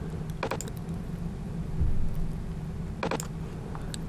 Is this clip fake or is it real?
real